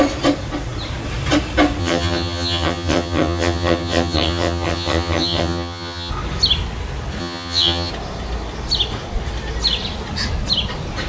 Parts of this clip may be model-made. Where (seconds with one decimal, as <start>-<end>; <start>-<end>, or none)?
1.8-6.1; 7.2-7.9